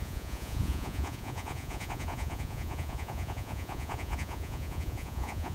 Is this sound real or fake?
fake